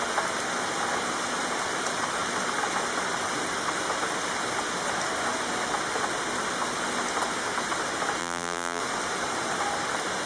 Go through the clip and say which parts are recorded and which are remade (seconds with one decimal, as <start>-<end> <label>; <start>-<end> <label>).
0.0-8.2 recorded; 8.2-8.8 remade; 8.8-10.3 recorded